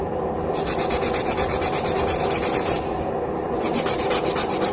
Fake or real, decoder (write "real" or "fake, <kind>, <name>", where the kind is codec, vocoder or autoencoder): real